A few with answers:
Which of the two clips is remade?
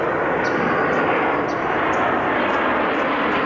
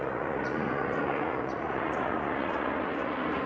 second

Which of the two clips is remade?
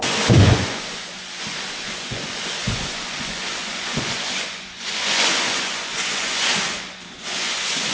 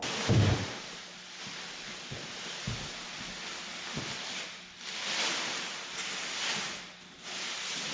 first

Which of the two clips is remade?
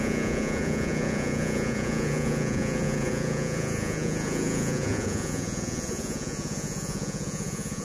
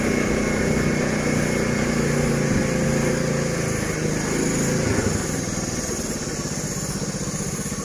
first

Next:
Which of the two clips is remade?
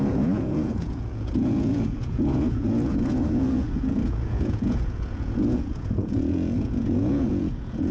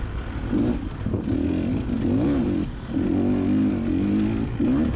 first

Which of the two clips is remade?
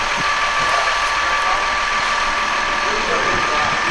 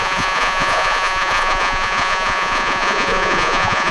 second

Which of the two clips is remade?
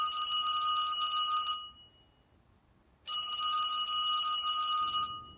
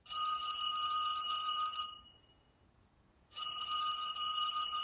second